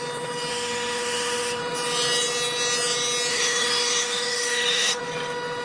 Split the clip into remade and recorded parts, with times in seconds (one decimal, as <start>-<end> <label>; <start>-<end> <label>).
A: 0.0-0.5 recorded; 0.5-1.6 remade; 1.6-3.3 recorded; 3.3-5.0 remade; 5.0-5.6 recorded